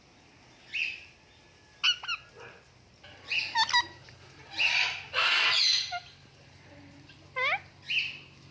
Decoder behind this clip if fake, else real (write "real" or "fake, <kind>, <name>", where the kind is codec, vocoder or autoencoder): real